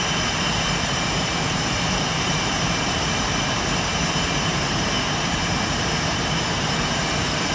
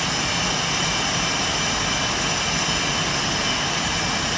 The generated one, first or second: first